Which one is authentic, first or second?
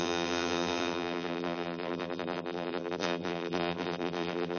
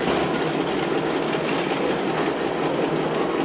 second